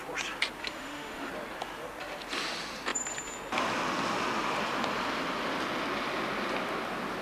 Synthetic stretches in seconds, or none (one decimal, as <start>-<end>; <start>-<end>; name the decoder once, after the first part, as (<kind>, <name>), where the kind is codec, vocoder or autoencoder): 0.6-1.3 (autoencoder, DAC-VAE)